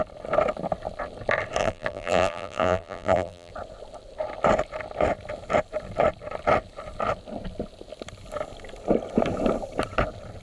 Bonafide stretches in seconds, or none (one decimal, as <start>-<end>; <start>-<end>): 0.0-1.6; 3.5-10.4